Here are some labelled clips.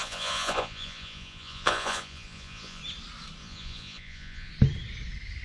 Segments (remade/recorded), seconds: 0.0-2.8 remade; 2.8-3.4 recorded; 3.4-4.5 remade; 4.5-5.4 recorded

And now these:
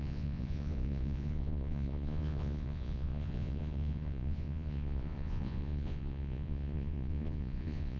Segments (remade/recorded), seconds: 0.0-8.0 remade